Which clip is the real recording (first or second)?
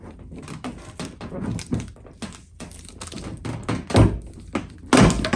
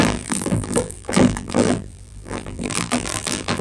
first